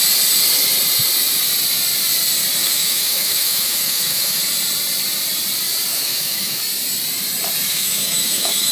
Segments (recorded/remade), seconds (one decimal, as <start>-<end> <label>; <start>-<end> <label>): 0.0-2.6 recorded; 2.6-4.4 remade; 4.4-5.9 recorded; 5.9-6.6 remade; 6.6-7.7 recorded; 7.7-8.7 remade